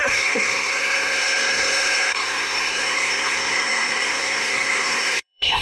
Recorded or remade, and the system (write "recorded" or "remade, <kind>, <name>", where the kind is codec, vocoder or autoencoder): remade, codec, SNAC